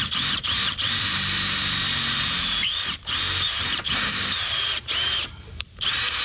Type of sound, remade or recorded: remade